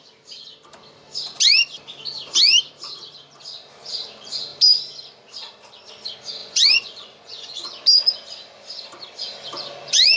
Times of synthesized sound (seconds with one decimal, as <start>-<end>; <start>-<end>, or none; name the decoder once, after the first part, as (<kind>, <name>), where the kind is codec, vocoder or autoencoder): 6.4-7.7 (vocoder, Vocos)